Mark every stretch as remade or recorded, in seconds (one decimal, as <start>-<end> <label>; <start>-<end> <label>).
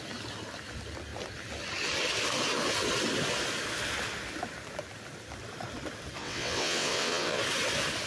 0.0-6.2 recorded; 6.2-7.4 remade; 7.4-8.1 recorded